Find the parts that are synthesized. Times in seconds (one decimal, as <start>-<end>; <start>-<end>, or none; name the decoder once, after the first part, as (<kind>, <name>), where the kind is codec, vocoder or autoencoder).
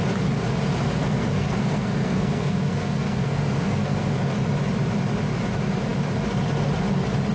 1.0-4.3 (codec, SNAC)